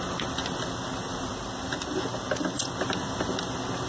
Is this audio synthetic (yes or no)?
no